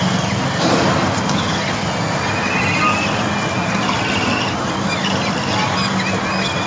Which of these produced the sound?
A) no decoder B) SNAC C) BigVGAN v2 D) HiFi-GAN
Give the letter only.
A